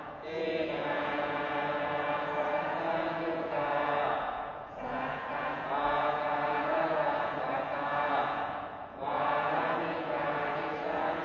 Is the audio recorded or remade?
remade